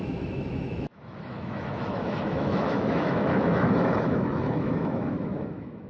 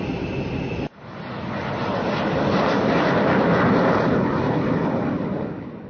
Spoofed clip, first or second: first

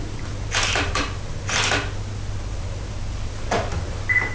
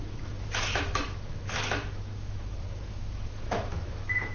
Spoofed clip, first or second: second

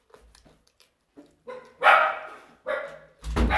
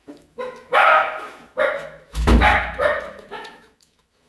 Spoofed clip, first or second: second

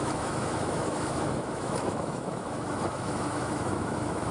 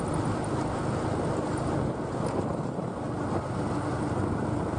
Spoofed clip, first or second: first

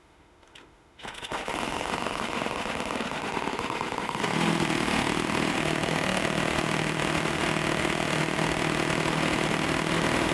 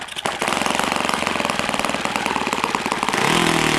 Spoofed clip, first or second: first